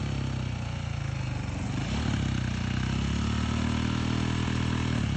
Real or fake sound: real